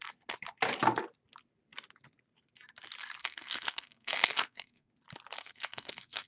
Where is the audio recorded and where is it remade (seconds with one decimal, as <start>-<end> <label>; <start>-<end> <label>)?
0.0-3.2 recorded; 3.2-4.9 remade; 4.9-5.4 recorded; 5.4-6.3 remade